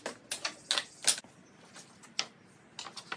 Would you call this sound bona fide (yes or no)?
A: yes